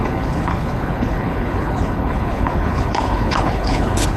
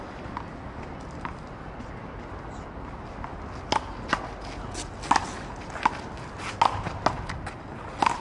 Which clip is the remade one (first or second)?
first